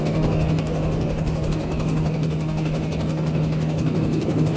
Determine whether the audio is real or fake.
fake